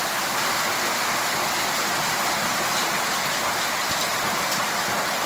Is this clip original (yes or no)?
yes